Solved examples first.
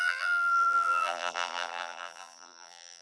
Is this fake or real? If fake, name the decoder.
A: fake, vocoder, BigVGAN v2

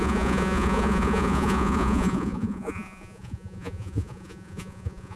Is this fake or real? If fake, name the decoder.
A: fake, vocoder, Vocos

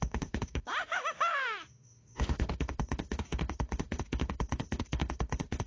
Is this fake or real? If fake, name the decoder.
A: fake, autoencoder, DAC-VAE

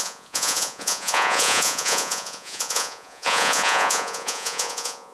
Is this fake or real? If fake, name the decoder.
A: fake, vocoder, Vocos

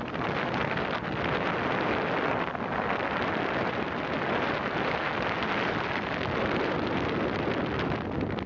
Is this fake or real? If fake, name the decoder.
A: real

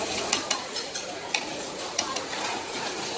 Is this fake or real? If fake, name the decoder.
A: fake, vocoder, Vocos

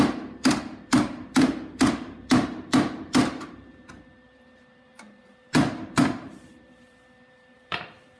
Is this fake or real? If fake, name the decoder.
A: fake, vocoder, BigVGAN v2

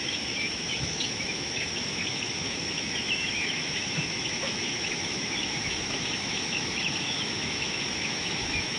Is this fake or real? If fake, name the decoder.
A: fake, autoencoder, DAC-VAE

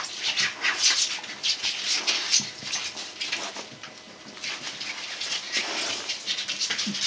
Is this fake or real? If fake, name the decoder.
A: real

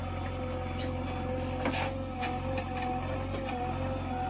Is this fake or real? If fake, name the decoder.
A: real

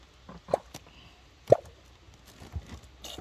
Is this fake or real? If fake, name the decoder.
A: real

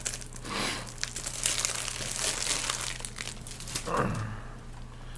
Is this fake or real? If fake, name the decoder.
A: real